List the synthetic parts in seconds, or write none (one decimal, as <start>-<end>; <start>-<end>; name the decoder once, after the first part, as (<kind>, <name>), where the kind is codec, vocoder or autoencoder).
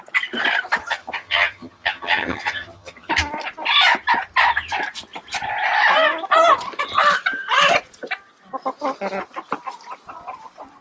0.8-3.1 (vocoder, HiFi-GAN)